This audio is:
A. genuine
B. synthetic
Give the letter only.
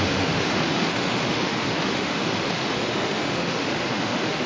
B